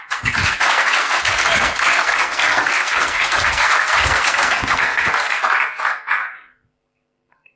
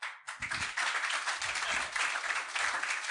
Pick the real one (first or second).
second